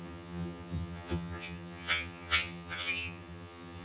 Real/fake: fake